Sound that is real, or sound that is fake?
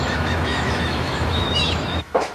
fake